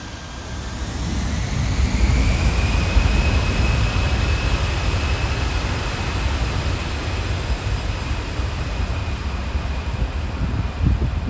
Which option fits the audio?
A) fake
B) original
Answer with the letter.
B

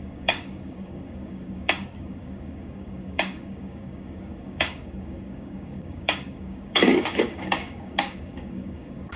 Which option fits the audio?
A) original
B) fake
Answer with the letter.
B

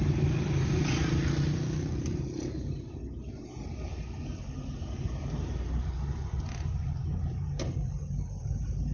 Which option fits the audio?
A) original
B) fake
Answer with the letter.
A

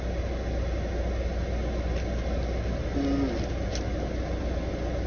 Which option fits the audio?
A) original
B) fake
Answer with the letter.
A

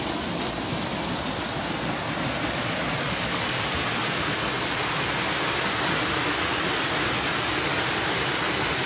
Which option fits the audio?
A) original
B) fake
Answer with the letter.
A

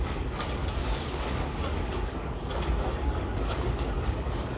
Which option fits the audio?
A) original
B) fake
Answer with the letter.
B